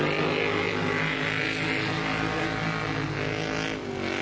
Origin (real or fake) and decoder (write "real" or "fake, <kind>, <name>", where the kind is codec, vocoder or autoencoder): real